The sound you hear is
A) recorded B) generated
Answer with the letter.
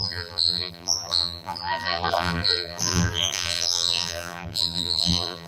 B